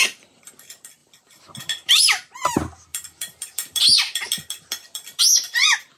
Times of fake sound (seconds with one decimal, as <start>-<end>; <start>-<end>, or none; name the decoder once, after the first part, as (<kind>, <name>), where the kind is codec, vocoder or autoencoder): 0.0-0.5 (vocoder, BigVGAN v2); 1.0-2.0; 2.9-5.2